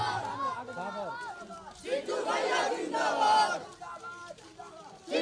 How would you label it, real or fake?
real